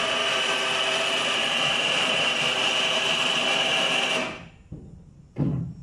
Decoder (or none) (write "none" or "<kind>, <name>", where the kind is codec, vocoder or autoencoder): vocoder, BigVGAN v2